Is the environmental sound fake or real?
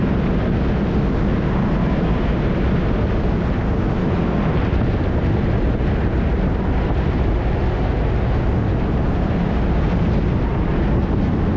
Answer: real